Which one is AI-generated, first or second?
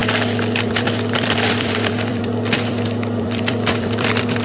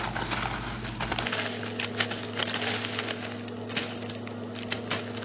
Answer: first